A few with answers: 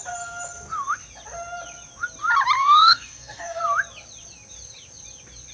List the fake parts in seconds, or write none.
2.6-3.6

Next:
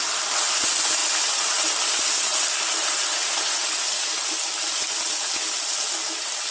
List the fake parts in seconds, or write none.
none

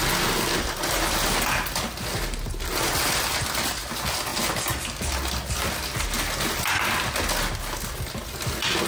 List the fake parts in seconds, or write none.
none

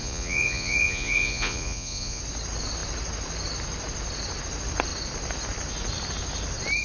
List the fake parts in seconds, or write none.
0.0-2.2